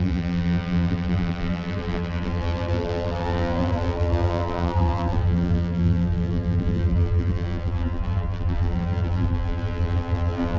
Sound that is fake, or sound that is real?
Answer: fake